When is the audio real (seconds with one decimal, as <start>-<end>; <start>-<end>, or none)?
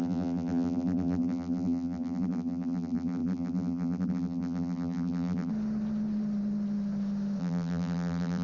5.5-7.4